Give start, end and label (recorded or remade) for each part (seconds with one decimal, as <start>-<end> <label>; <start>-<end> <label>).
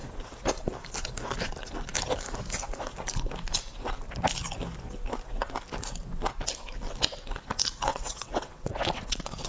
0.0-7.9 recorded; 7.9-9.5 remade